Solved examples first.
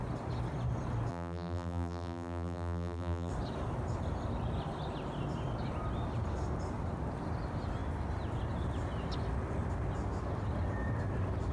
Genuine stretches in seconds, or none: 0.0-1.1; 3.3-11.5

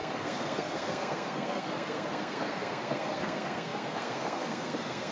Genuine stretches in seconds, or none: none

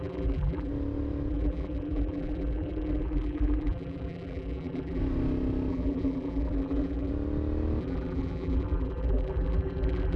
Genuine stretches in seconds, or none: 0.7-1.3; 5.0-5.7; 7.1-7.8

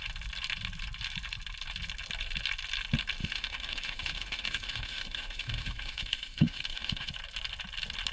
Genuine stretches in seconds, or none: 0.0-3.2; 7.1-8.1

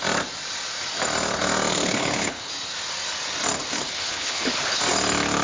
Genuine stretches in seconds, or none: 0.0-1.7; 2.5-3.7; 4.8-5.4

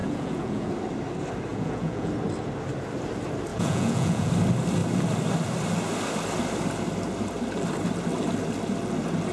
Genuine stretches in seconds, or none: 0.7-1.5; 2.1-3.5; 4.3-9.3

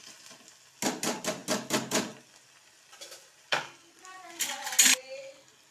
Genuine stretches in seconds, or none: 0.0-3.5; 4.0-5.7